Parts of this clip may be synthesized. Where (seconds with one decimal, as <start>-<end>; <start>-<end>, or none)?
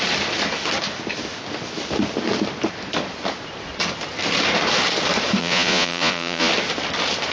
5.4-6.5